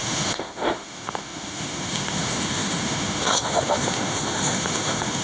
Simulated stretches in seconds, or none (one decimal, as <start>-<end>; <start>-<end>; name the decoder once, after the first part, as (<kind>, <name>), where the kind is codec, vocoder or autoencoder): 0.0-5.2 (autoencoder, DAC-VAE)